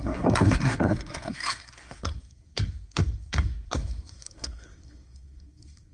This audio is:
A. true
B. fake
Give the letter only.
B